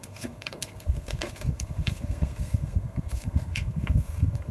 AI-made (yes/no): yes